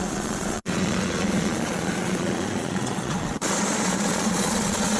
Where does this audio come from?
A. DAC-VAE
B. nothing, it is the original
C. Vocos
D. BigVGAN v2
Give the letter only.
C